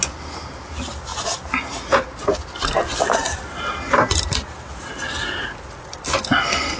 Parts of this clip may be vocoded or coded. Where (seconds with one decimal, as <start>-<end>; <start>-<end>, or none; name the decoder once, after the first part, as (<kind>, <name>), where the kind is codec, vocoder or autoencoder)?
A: none